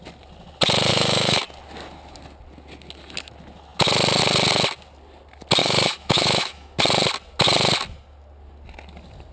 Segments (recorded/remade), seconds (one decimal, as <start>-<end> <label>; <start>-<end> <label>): 0.0-0.9 recorded; 0.9-1.4 remade; 1.4-5.6 recorded; 5.6-6.8 remade; 6.8-9.3 recorded